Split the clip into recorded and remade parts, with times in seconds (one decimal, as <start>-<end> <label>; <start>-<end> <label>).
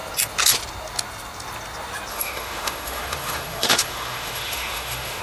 0.0-2.1 recorded; 2.1-5.2 remade